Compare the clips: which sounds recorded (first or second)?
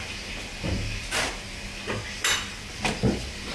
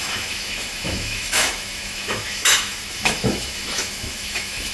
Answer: first